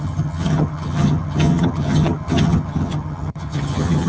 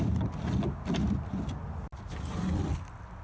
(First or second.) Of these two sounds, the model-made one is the first